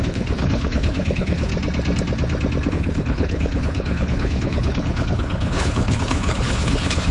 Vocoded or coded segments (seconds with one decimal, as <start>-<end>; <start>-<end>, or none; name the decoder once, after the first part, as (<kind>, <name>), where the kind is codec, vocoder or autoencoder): 0.0-1.5 (codec, HILCodec); 2.7-7.1